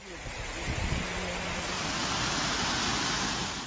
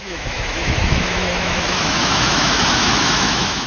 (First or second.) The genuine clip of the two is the first